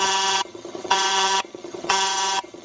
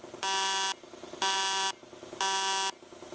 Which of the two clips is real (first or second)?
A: second